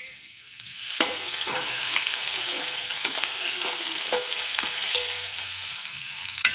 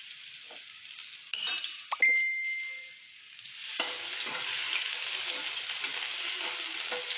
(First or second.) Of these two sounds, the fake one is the first